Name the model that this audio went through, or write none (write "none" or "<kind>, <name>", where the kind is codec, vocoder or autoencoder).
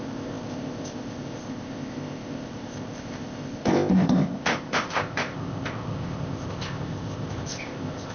codec, ZipCodec